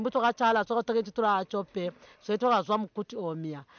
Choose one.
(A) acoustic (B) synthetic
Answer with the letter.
A